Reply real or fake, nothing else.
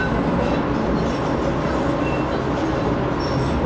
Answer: real